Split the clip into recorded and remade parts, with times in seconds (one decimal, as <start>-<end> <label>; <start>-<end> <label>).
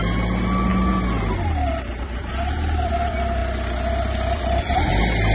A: 0.0-5.3 recorded